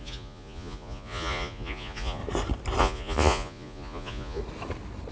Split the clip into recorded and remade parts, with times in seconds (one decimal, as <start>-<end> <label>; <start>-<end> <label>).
0.0-2.2 remade; 2.2-2.8 recorded; 2.8-4.4 remade; 4.4-5.1 recorded